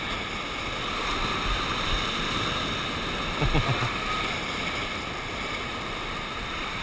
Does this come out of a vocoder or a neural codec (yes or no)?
no